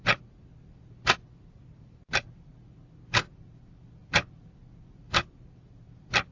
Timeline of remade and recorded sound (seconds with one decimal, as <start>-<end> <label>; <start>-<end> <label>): 0.0-2.8 remade; 2.8-3.3 recorded; 3.3-6.3 remade

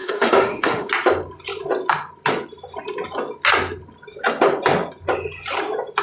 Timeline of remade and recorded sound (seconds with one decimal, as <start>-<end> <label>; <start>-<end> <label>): 0.0-0.9 remade; 0.9-6.0 recorded

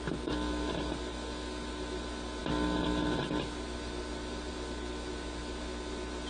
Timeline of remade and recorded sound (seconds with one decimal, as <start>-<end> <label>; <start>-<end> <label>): 0.0-6.3 recorded

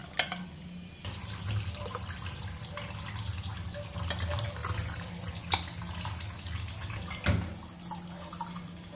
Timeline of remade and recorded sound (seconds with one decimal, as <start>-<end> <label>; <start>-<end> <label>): 0.0-9.0 recorded

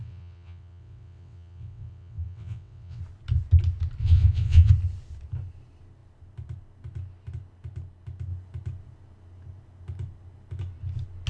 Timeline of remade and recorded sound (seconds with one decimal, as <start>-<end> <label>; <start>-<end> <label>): 0.0-3.0 remade; 3.0-4.0 recorded; 4.0-4.7 remade; 4.7-11.3 recorded

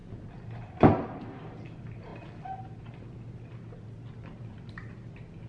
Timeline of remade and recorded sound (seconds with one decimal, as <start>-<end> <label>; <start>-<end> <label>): 0.0-5.5 recorded